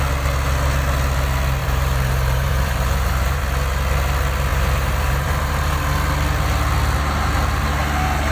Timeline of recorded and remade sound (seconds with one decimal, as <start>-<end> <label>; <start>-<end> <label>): 0.0-1.6 recorded; 1.6-3.4 remade; 3.4-4.5 recorded; 4.5-5.8 remade; 5.8-8.3 recorded